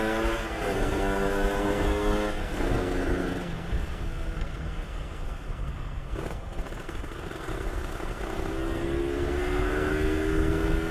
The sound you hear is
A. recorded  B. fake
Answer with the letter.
B